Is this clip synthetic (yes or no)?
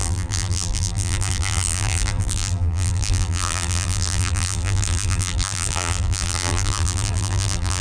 yes